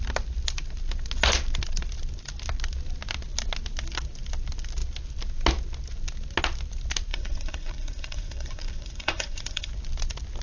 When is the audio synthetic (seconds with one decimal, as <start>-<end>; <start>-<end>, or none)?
7.1-9.7